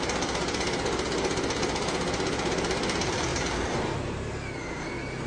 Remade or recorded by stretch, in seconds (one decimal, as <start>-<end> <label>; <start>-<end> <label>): 0.0-3.3 recorded; 3.3-4.2 remade; 4.2-5.3 recorded